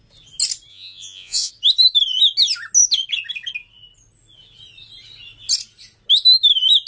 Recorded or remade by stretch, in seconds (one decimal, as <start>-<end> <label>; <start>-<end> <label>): 0.0-0.7 recorded; 0.7-1.5 remade; 1.5-6.9 recorded